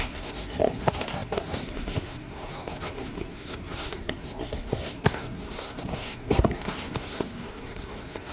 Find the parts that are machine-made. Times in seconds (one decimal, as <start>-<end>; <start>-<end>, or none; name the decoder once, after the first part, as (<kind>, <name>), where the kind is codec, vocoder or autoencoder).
0.0-8.3 (codec, SNAC)